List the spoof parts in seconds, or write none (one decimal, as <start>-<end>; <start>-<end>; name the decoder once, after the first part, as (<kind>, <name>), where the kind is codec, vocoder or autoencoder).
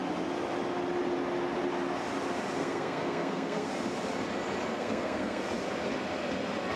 2.6-3.7 (codec, SNAC); 4.7-5.4